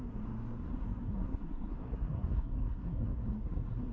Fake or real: fake